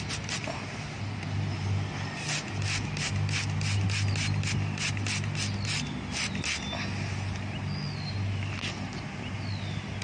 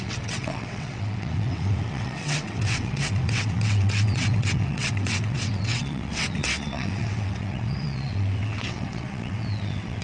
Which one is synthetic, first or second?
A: second